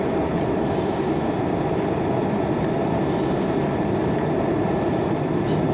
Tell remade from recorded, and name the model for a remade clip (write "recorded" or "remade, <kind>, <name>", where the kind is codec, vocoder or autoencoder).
remade, vocoder, BigVGAN v2